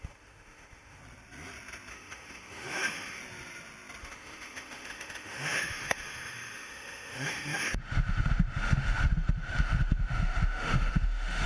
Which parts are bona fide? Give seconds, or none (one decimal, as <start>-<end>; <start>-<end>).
1.0-1.9; 3.2-4.0